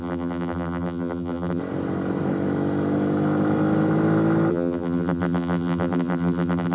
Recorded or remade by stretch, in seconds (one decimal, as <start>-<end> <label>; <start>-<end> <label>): 0.0-1.6 remade; 1.6-4.5 recorded; 4.5-6.7 remade